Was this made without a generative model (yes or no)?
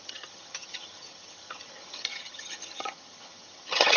no